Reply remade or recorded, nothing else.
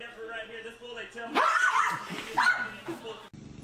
recorded